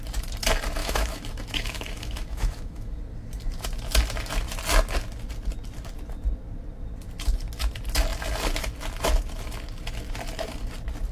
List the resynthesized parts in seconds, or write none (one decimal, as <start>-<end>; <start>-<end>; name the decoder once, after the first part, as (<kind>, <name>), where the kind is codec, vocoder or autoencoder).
0.8-3.0 (autoencoder, DAC-VAE)